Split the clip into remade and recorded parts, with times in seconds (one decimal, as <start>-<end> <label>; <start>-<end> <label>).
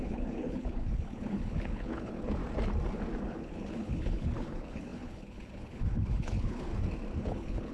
0.0-2.4 remade; 2.4-3.2 recorded; 3.2-6.7 remade; 6.7-7.2 recorded; 7.2-7.7 remade